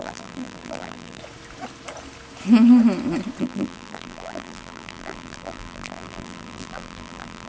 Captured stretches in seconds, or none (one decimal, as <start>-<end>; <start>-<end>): 1.2-3.4